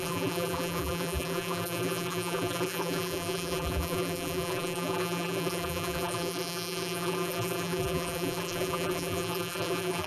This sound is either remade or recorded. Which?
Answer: remade